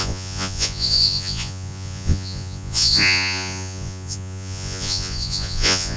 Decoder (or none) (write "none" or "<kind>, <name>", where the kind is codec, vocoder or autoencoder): vocoder, Vocos